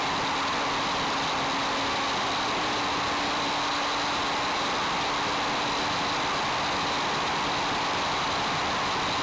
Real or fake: real